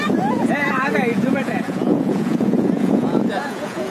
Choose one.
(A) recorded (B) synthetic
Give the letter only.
B